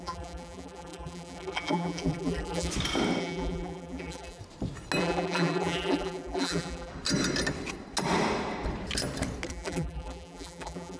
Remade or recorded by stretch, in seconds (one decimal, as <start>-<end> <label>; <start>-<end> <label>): 0.0-2.7 remade; 2.7-3.2 recorded; 3.2-4.4 remade; 4.4-5.0 recorded; 5.0-6.9 remade; 6.9-9.5 recorded; 9.5-11.0 remade